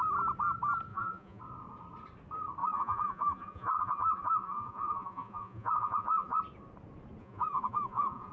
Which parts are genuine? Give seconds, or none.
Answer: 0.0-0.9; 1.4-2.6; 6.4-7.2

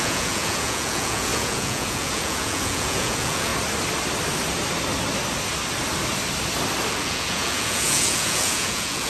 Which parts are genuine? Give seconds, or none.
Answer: 3.5-6.9